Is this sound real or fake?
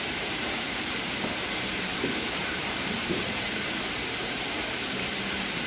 fake